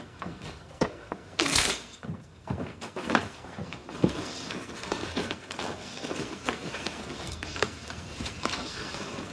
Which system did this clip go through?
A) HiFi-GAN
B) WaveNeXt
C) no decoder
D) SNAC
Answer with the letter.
D